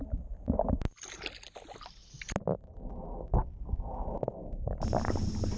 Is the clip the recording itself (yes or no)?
yes